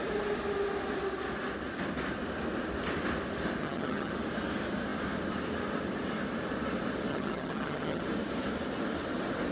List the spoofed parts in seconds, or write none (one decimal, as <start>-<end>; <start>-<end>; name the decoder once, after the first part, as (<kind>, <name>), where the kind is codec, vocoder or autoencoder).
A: 3.6-4.1 (vocoder, HiFi-GAN); 7.1-8.0